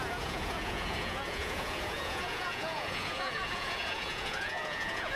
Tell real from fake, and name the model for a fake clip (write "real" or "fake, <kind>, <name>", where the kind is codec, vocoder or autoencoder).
fake, vocoder, Vocos